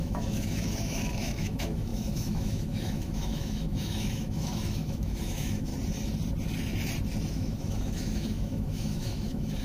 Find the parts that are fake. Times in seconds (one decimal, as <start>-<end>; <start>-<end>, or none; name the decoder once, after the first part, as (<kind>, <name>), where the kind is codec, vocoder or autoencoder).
0.0-5.7 (autoencoder, DAC-VAE); 7.3-9.6